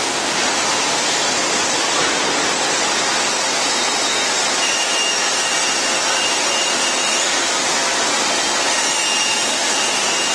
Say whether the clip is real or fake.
real